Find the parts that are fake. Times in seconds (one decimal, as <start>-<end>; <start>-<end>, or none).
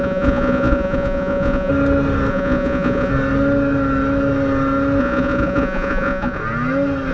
0.0-1.7; 2.3-3.1; 5.0-6.4